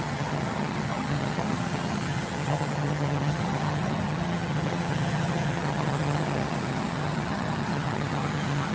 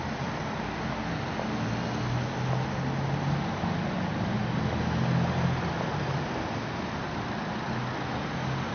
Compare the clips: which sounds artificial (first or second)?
first